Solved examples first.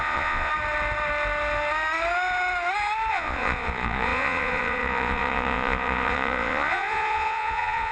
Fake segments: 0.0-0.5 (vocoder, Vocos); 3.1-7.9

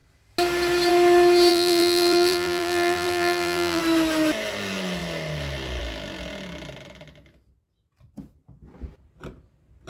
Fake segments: 1.5-3.8 (vocoder, BigVGAN v2)